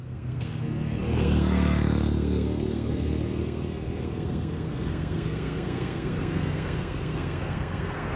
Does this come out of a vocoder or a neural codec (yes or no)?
yes